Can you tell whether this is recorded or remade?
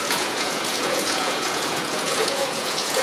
remade